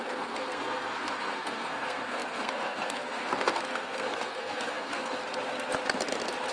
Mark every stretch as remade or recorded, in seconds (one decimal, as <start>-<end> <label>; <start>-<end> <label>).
0.0-5.2 remade; 5.2-6.5 recorded